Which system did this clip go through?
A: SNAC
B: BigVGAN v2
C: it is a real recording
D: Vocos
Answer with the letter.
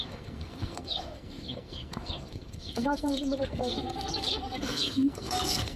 A